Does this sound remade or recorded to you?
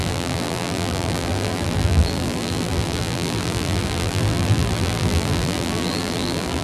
remade